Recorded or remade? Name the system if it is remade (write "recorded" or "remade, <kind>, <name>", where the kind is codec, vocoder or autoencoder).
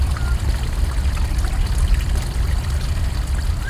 recorded